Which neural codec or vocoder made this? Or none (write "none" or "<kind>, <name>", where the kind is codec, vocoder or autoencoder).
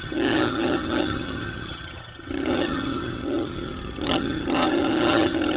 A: vocoder, HiFi-GAN